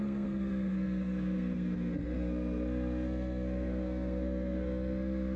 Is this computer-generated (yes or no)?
yes